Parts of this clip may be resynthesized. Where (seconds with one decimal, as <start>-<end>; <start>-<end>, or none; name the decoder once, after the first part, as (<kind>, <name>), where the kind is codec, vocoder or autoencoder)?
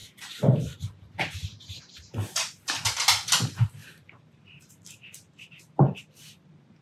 0.0-1.8 (vocoder, BigVGAN v2); 3.8-6.2